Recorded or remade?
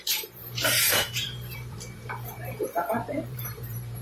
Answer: remade